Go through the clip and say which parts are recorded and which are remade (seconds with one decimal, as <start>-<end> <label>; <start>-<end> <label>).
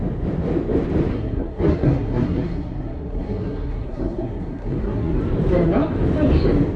0.0-1.1 recorded; 1.1-5.2 remade; 5.2-6.8 recorded